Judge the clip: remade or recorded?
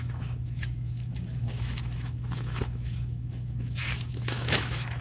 remade